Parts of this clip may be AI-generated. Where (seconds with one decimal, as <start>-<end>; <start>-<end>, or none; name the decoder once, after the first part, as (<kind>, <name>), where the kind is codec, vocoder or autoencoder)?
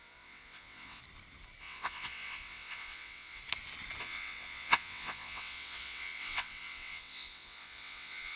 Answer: 0.0-1.0 (vocoder, WaveNeXt); 1.6-3.4; 4.0-8.4